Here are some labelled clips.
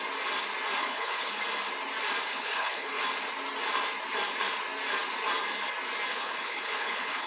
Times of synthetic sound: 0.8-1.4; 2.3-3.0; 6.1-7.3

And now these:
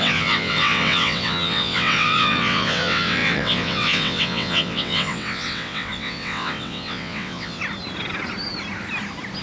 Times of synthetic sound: 0.0-7.6

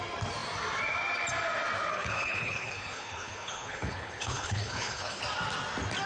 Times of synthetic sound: 1.9-5.2